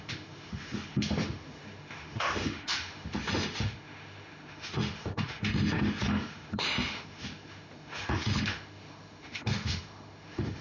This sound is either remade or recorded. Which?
remade